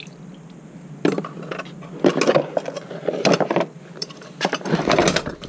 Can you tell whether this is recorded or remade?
recorded